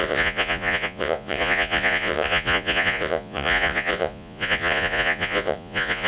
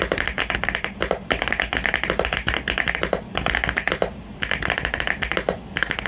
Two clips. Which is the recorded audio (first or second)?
second